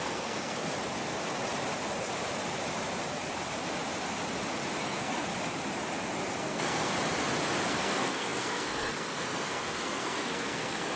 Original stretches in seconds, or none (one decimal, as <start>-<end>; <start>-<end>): 0.7-4.8; 5.3-6.4; 6.9-7.7